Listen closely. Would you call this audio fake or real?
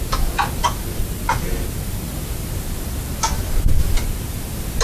real